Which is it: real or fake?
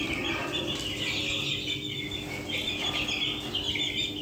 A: real